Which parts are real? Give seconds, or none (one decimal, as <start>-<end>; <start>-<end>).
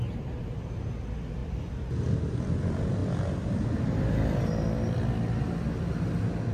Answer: 0.0-6.5